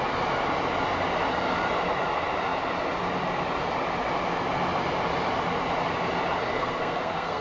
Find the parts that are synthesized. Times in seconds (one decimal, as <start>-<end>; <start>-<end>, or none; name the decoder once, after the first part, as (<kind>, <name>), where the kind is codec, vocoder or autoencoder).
6.5-7.4 (codec, SNAC)